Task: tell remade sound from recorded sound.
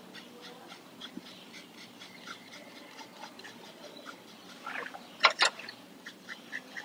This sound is remade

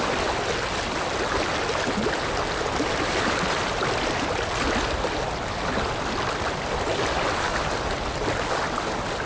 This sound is recorded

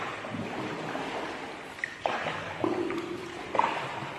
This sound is remade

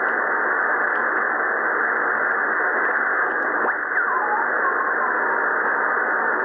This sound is recorded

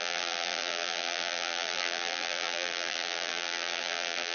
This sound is remade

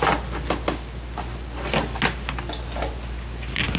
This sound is recorded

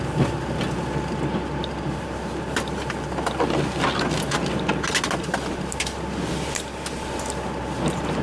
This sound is recorded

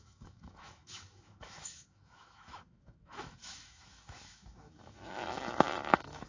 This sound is remade